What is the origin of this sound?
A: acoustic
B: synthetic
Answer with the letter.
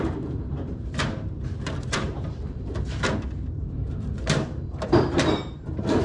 B